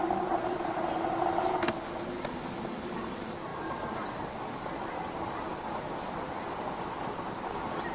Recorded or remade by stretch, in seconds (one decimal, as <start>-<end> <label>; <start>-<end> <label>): 0.0-3.5 recorded; 3.5-6.1 remade; 6.1-7.9 recorded

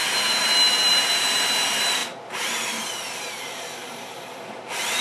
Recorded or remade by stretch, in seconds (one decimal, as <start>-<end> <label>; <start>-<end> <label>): 0.0-5.0 remade